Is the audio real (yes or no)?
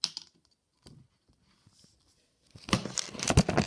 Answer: yes